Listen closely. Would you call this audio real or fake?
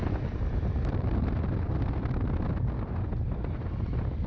real